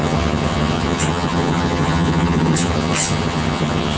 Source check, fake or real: fake